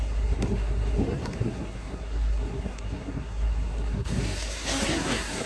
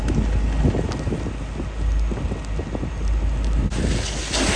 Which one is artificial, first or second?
first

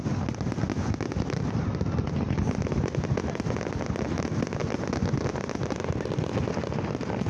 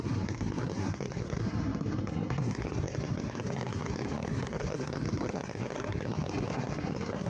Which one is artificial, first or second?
second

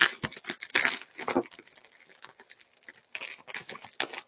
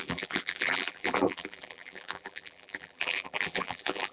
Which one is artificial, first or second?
second